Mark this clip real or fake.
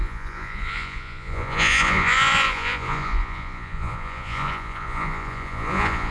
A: fake